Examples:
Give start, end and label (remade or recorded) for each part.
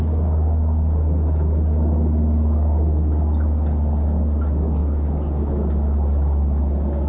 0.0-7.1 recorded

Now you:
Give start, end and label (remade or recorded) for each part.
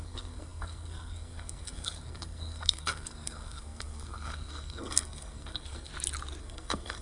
0.0-5.9 remade; 5.9-6.4 recorded; 6.4-7.0 remade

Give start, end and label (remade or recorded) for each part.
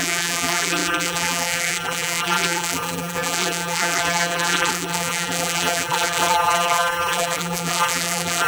0.0-8.5 remade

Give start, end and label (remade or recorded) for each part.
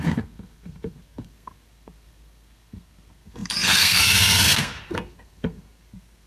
0.0-6.3 remade